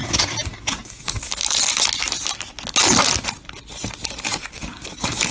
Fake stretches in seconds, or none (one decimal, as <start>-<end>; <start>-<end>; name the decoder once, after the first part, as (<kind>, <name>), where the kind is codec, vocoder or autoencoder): 0.5-1.3 (codec, DAC); 4.5-5.3